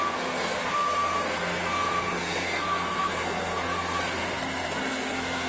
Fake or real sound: fake